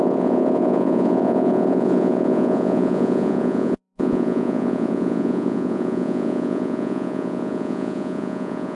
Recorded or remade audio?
remade